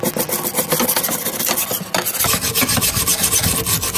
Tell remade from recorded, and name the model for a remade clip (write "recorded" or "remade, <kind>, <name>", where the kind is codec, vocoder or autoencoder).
recorded